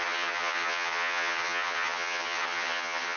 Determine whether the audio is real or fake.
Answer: fake